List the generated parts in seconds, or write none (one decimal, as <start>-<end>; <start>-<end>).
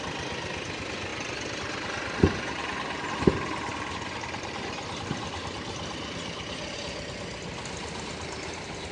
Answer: none